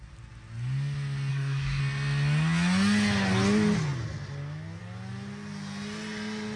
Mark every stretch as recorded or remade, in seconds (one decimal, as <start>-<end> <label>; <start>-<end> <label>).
0.0-1.3 recorded; 1.3-1.8 remade; 1.8-6.6 recorded